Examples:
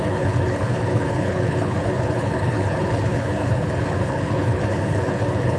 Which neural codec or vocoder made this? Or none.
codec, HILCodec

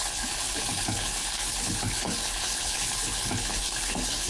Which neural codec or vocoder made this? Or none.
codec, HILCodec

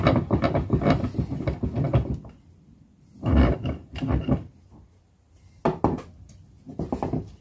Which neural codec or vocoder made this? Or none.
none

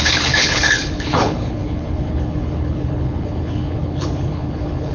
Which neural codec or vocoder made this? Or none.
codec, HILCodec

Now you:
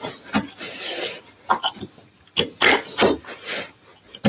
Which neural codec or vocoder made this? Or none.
none